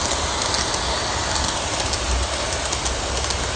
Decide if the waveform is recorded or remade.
recorded